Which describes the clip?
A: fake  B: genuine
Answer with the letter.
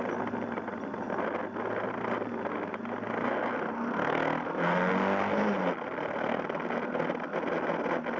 B